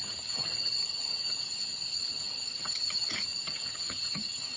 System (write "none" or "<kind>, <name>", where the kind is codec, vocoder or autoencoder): vocoder, HiFi-GAN